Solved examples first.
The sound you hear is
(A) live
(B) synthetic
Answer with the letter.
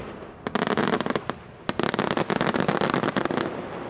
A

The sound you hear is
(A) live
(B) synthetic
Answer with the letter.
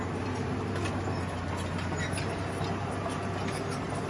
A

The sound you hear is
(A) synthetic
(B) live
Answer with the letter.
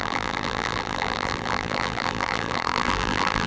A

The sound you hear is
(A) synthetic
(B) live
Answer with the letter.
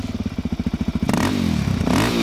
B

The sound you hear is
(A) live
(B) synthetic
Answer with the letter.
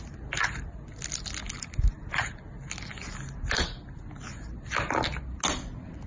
A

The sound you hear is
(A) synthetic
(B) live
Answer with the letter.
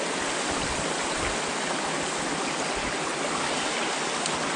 B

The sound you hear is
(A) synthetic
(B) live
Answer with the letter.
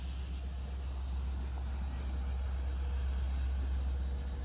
B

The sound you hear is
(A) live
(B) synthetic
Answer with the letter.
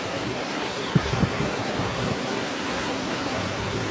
B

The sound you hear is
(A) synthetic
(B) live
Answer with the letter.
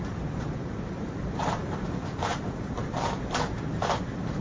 A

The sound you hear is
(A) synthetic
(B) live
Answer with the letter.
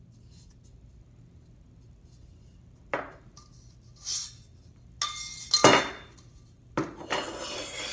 B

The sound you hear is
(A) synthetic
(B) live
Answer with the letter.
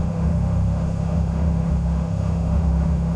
A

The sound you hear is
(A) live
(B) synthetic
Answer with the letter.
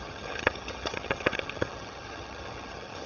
B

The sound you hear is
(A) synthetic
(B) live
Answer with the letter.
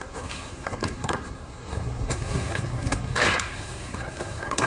A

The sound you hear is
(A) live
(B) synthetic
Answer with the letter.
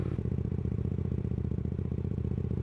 B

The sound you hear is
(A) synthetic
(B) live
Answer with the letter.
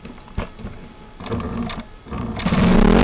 B